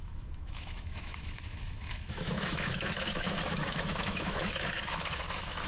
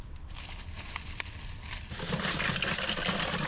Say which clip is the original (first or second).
second